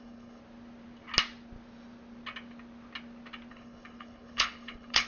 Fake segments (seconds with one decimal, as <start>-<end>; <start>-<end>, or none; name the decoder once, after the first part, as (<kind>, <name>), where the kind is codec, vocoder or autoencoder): 0.0-0.4 (codec, HILCodec); 3.5-5.1